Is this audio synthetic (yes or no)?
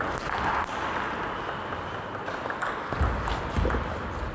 no